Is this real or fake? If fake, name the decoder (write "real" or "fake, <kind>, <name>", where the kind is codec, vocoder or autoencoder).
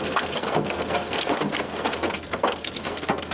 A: fake, codec, SNAC